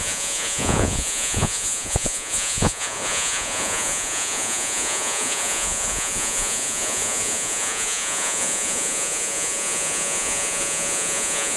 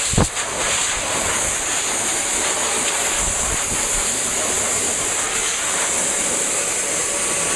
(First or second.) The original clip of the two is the second